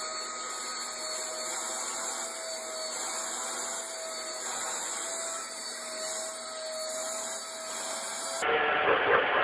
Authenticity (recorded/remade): recorded